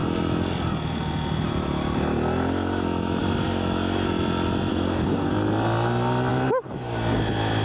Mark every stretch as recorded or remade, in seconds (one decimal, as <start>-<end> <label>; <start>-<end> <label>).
0.0-4.7 recorded; 4.7-5.3 remade; 5.3-7.6 recorded